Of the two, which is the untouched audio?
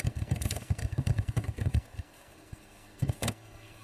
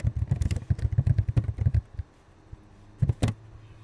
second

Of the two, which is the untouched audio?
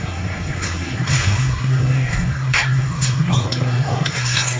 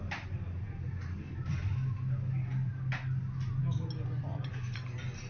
second